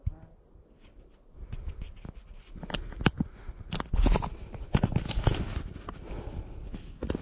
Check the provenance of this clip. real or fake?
real